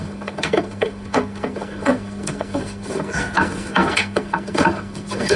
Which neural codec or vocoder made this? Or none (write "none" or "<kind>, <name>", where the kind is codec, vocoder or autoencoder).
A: codec, SNAC